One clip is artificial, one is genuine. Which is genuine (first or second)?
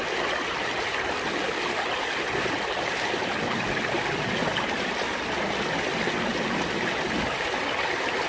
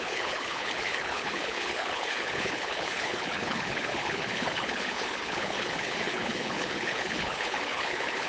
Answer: first